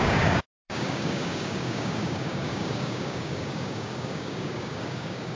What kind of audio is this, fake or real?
fake